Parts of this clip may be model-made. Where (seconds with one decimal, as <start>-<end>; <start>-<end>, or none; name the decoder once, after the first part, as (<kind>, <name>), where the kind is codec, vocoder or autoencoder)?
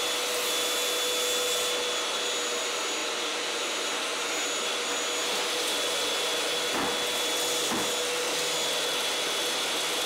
none